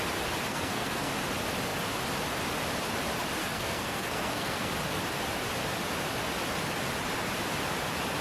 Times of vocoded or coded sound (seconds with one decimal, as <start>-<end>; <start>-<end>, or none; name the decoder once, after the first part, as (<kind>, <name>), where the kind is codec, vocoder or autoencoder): 0.5-1.1 (codec, SNAC); 3.4-4.7